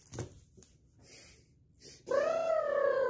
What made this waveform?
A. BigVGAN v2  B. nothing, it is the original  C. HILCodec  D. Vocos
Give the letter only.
B